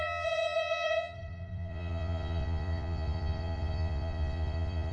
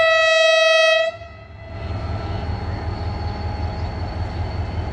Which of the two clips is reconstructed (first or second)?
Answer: first